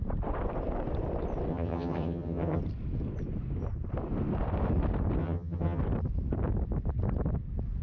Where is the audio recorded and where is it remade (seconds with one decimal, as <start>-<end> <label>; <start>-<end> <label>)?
0.0-1.5 recorded; 1.5-2.6 remade; 2.6-5.2 recorded; 5.2-5.8 remade; 5.8-7.8 recorded